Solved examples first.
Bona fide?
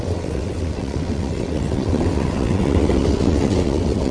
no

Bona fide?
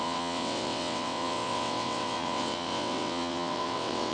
no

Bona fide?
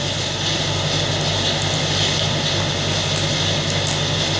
yes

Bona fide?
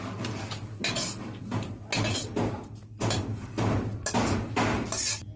yes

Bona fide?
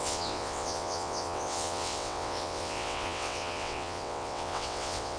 no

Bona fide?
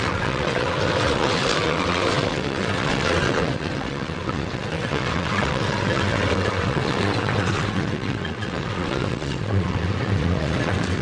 no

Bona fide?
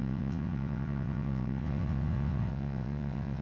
no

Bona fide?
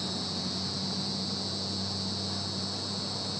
yes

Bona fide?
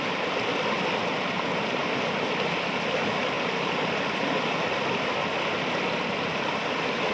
yes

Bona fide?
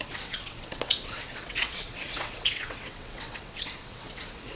no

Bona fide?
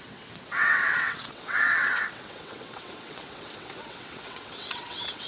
no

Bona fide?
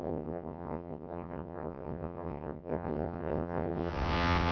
no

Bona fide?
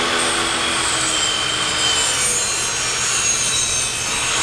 yes